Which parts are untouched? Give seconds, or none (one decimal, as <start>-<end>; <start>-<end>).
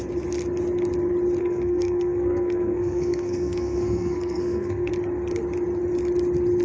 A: 0.0-1.4; 4.9-6.6